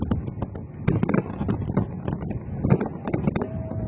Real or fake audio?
real